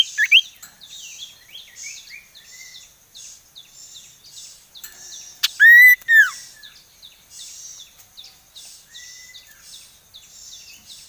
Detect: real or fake real